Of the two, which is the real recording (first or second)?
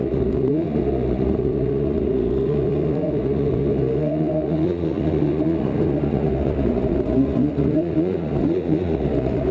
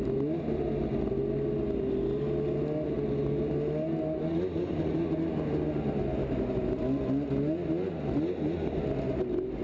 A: second